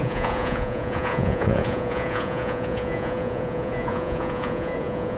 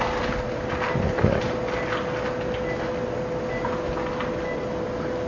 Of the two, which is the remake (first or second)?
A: first